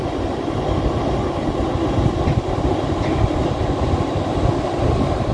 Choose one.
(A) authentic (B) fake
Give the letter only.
A